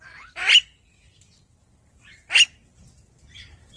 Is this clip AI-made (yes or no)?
no